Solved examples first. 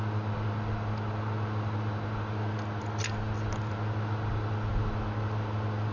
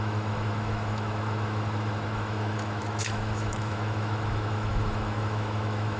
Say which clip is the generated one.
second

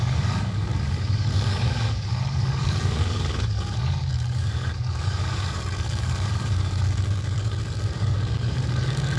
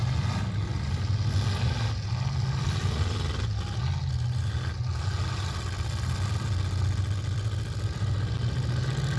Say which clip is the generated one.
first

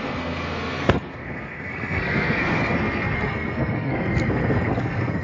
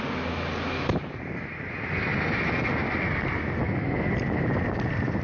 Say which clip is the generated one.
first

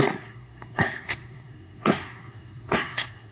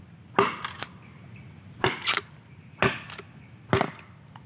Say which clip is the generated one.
first